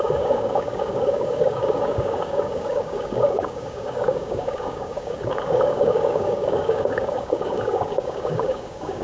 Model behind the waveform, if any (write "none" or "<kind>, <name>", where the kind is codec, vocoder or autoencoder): codec, DAC